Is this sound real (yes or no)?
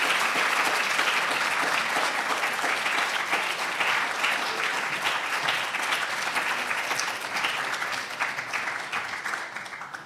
yes